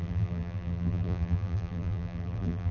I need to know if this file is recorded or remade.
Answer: remade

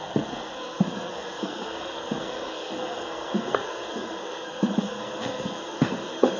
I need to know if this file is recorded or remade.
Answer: remade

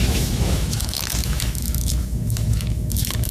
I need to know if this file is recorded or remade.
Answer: remade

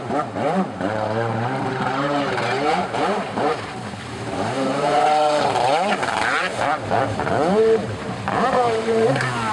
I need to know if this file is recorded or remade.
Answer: remade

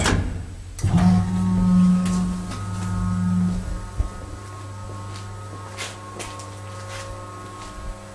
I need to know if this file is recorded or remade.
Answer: recorded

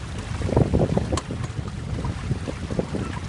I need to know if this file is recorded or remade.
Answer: recorded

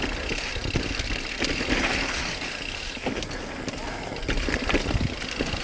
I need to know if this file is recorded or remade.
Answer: recorded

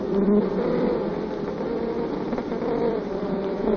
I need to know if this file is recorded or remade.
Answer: remade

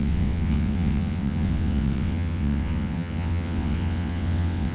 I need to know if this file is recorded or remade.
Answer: remade